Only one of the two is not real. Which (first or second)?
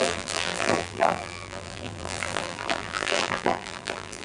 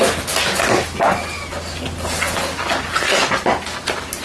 first